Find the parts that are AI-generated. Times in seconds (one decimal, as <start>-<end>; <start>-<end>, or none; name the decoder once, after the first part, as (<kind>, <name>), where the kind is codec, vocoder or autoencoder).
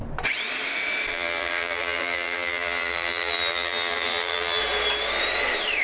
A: 1.1-4.6 (vocoder, BigVGAN v2)